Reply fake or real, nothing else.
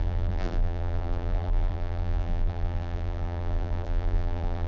fake